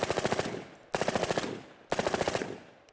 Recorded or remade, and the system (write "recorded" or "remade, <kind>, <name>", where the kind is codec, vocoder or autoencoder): recorded